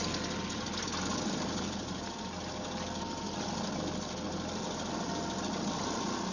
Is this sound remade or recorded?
recorded